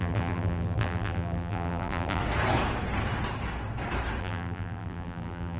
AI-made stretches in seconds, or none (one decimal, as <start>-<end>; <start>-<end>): 0.0-2.2; 4.2-5.6